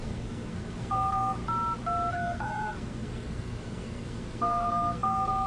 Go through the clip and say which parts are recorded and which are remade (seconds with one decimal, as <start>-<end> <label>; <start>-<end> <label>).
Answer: 0.0-1.4 remade; 1.4-2.1 recorded; 2.1-5.5 remade